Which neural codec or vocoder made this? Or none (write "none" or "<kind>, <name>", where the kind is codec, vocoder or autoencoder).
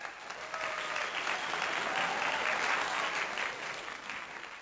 none